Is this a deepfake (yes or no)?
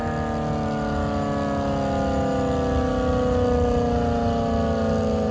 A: no